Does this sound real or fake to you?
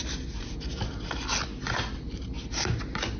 real